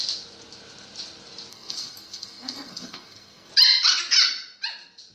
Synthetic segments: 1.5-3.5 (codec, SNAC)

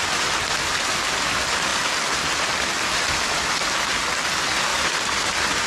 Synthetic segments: 4.7-5.7 (vocoder, BigVGAN v2)

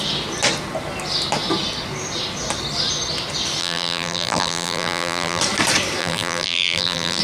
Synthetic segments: 3.6-5.4 (vocoder, BigVGAN v2); 6.0-7.2

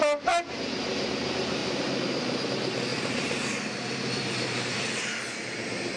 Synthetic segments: 1.6-2.4 (vocoder, BigVGAN v2); 2.9-4.8

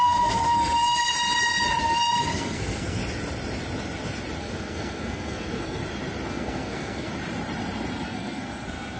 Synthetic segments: 0.0-1.1 (codec, SNAC); 1.8-3.0; 4.4-5.8; 6.3-7.1; 8.0-9.0

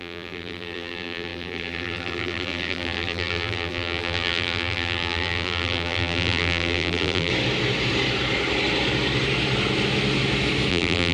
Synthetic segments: 0.0-7.3 (vocoder, BigVGAN v2); 10.7-11.1

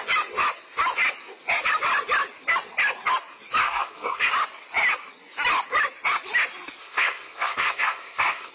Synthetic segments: 3.6-4.3 (codec, SNAC); 6.8-8.5